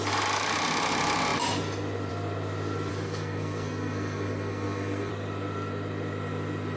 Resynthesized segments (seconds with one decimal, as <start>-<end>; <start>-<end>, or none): 2.9-5.1